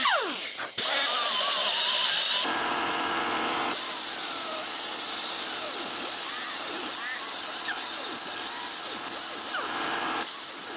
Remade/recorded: recorded